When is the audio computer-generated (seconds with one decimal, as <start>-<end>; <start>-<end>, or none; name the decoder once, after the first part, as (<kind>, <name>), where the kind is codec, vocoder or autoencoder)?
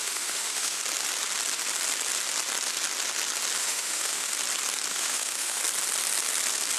0.0-0.8 (autoencoder, DAC-VAE); 3.6-4.3; 4.9-5.6